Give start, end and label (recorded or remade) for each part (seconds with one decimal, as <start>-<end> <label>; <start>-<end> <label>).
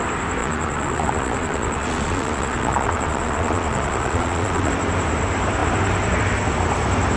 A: 0.0-0.4 recorded; 0.4-4.7 remade; 4.7-7.2 recorded